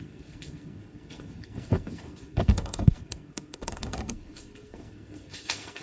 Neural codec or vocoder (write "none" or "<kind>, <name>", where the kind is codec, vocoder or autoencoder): codec, SNAC